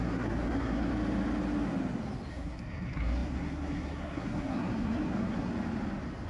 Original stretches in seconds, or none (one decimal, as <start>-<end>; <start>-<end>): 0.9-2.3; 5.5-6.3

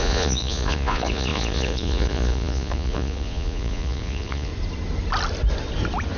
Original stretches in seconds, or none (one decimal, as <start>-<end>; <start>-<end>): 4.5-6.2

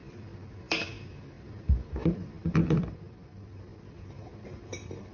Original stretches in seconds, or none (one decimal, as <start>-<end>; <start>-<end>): none